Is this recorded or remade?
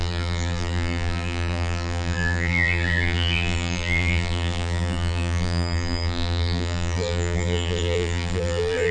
remade